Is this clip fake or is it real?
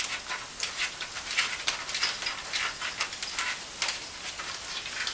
real